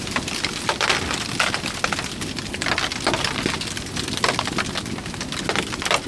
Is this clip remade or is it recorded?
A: recorded